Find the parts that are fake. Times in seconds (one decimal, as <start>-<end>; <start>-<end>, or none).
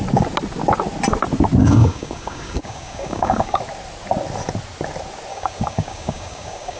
1.6-3.6; 5.3-6.8